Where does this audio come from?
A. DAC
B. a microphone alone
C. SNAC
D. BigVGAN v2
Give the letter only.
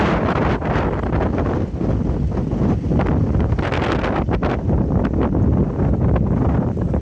B